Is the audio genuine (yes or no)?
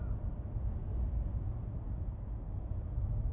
yes